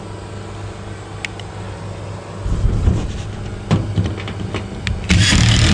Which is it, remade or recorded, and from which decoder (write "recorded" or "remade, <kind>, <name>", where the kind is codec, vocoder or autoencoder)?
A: recorded